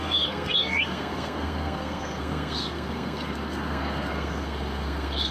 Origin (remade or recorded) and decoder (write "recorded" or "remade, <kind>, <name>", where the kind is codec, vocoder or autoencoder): remade, codec, SNAC